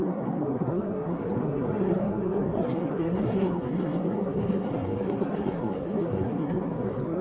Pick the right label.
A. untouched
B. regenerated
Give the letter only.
B